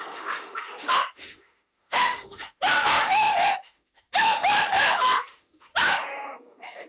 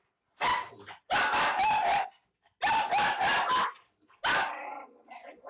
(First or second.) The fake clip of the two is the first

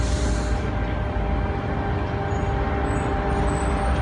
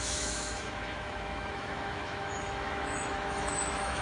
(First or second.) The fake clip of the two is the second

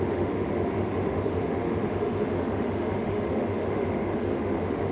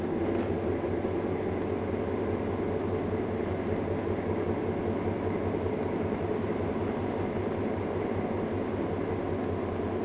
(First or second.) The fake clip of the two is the first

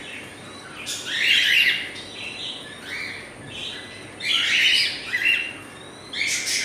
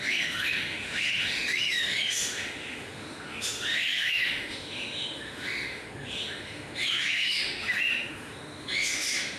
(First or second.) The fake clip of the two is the second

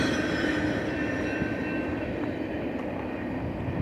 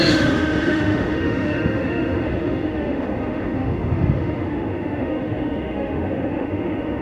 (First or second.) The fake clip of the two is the second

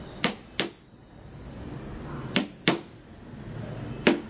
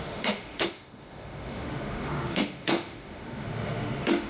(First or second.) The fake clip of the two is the second